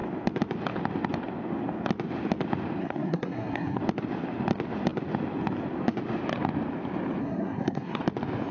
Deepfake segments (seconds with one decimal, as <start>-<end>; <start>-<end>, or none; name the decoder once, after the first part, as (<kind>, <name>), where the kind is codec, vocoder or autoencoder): 2.8-3.8 (codec, SNAC); 7.2-8.0